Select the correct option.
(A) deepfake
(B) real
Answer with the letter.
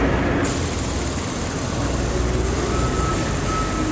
B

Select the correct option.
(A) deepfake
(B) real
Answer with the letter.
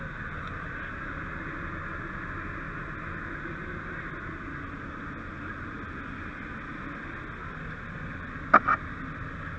B